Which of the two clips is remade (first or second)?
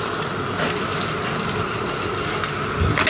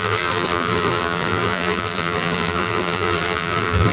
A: second